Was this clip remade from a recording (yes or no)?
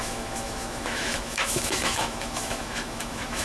yes